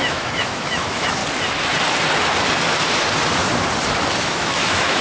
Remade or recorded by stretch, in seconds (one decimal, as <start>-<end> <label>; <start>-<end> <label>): 0.0-1.2 remade; 1.2-4.2 recorded; 4.2-5.0 remade